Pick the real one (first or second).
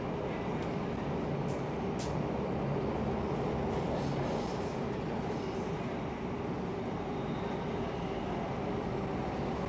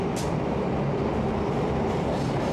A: first